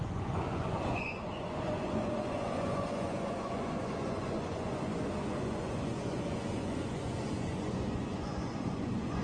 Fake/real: fake